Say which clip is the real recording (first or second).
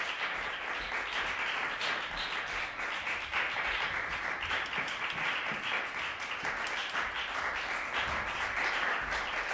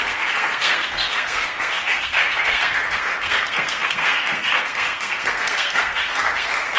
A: first